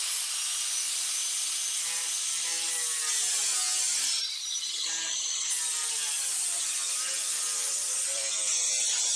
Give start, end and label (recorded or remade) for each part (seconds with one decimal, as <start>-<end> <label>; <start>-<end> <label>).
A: 0.0-5.8 recorded; 5.8-8.3 remade; 8.3-9.2 recorded